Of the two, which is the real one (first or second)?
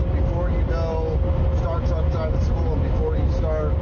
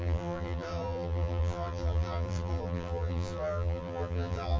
first